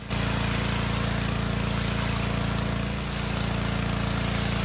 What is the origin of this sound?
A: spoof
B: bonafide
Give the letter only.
B